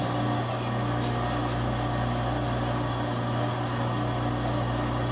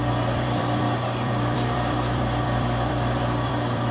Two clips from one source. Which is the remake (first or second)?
second